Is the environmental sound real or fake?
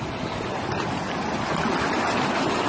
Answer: real